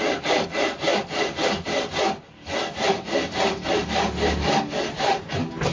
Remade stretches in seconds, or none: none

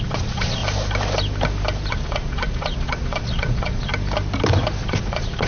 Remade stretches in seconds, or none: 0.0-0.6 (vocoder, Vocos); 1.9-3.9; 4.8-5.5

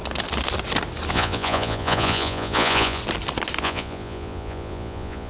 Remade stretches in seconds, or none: 1.1-3.0 (vocoder, Vocos); 3.6-5.3

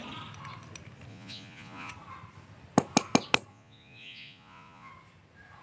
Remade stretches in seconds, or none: 1.1-1.9 (vocoder, Vocos); 3.5-4.9

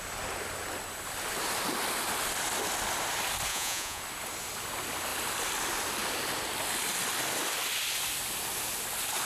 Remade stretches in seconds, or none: 3.5-4.0 (vocoder, Vocos)

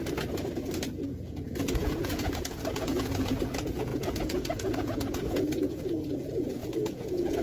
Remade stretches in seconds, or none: 0.9-7.4 (vocoder, Vocos)

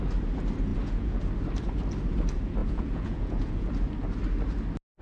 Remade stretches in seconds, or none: 0.7-1.2 (vocoder, Vocos); 2.6-3.7

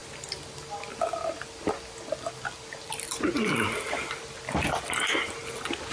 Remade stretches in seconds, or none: none